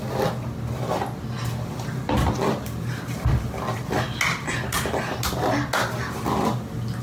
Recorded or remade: recorded